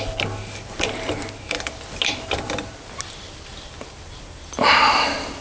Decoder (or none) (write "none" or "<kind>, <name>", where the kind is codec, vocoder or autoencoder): none